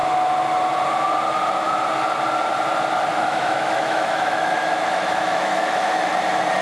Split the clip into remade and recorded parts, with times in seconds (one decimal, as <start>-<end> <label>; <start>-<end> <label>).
0.0-3.1 recorded; 3.1-6.1 remade; 6.1-6.6 recorded